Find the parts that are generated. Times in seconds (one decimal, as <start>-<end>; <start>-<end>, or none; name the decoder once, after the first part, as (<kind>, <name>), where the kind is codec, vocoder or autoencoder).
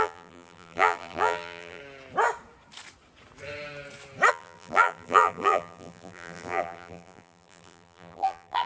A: 0.0-1.8 (vocoder, BigVGAN v2); 4.3-8.7